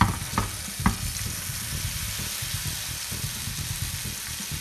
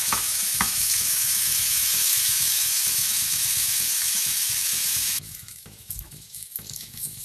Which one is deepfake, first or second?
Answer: second